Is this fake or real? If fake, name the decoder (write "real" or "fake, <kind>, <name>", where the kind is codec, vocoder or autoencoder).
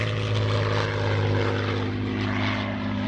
real